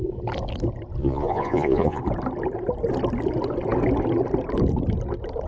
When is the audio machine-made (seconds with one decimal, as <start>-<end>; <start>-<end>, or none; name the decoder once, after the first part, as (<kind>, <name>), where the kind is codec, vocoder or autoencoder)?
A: 1.0-2.0 (vocoder, Vocos)